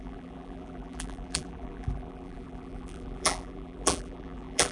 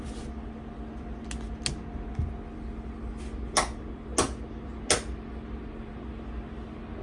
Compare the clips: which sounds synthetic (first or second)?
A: first